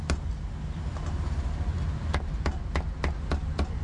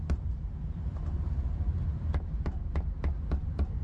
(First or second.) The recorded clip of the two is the first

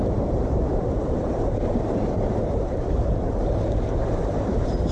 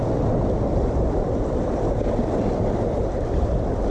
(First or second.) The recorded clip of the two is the second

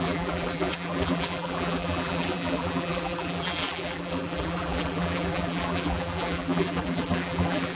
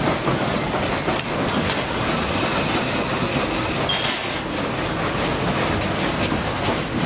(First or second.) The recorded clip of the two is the second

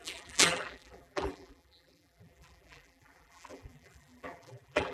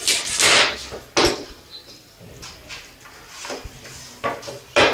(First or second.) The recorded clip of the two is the second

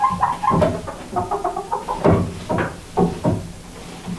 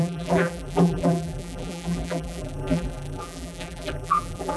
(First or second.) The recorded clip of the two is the first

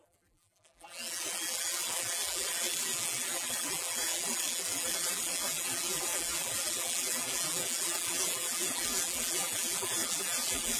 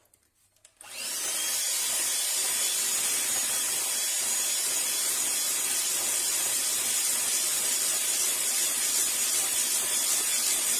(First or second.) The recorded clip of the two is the second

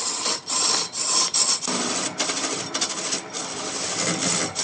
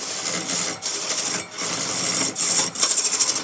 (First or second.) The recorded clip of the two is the second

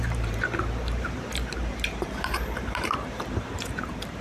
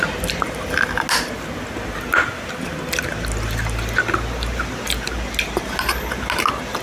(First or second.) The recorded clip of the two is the second